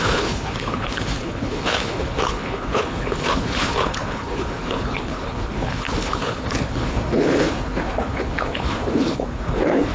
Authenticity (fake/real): fake